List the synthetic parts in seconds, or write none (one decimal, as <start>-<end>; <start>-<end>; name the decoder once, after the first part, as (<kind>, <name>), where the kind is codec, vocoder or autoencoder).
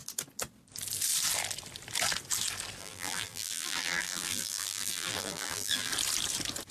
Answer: 2.8-5.9 (vocoder, BigVGAN v2)